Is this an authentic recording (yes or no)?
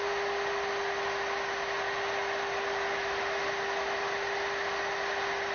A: yes